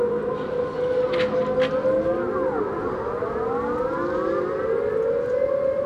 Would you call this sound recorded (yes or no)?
yes